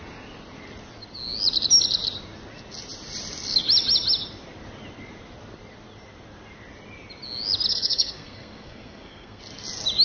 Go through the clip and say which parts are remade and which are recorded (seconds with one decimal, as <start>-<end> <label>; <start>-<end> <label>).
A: 0.0-7.7 recorded; 7.7-9.4 remade; 9.4-10.0 recorded